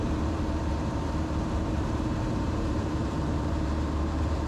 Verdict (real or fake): fake